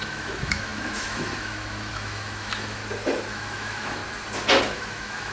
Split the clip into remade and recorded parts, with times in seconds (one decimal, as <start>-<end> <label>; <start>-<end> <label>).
0.0-2.8 remade; 2.8-3.3 recorded; 3.3-4.0 remade; 4.0-4.6 recorded; 4.6-5.3 remade